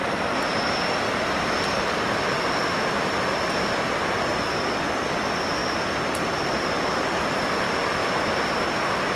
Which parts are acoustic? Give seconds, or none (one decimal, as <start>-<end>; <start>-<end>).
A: 2.2-5.6; 6.4-8.0; 8.6-9.2